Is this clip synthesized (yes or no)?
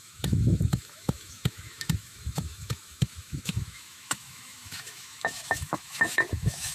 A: yes